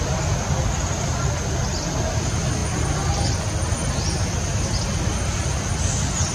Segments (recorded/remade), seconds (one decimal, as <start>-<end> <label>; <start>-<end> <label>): 0.0-6.3 recorded